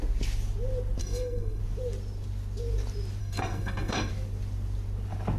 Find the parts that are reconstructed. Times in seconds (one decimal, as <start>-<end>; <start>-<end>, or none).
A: 1.0-1.6; 3.2-4.1